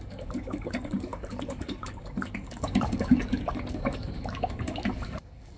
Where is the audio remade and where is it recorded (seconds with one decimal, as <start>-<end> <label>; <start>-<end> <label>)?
0.0-5.6 remade